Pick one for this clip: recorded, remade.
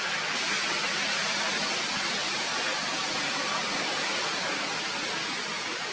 recorded